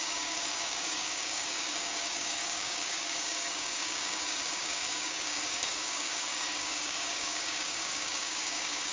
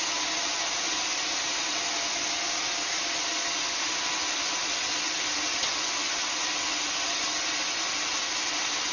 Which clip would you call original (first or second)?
second